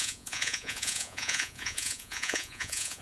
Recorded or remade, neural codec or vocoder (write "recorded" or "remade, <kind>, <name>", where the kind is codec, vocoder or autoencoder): remade, vocoder, Vocos